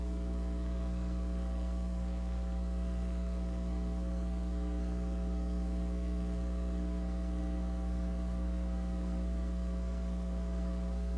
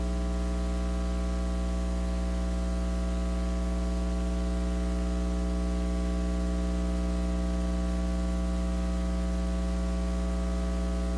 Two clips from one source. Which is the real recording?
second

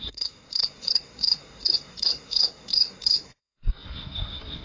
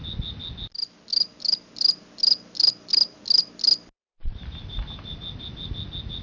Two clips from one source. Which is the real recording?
second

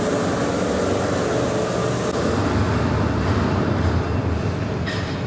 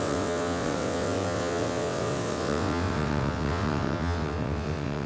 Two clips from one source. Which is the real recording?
first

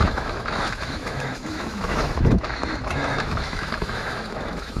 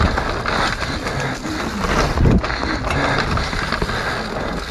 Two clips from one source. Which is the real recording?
second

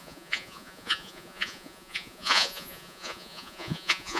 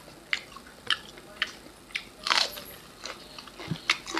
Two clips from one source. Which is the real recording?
second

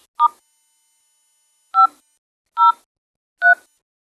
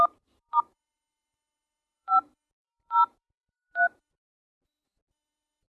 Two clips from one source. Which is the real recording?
first